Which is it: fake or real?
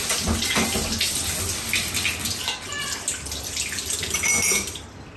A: real